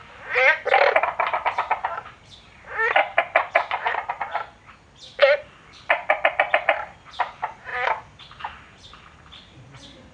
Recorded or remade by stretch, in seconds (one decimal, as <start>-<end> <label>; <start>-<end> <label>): 0.0-10.1 recorded